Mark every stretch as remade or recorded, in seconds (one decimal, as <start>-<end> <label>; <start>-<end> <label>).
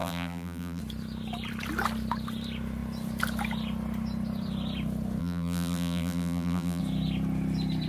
0.0-0.8 remade; 0.8-5.2 recorded; 5.2-6.8 remade; 6.8-7.9 recorded